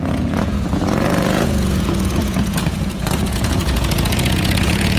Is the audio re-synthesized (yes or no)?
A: yes